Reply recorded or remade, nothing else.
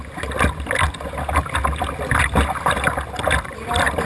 recorded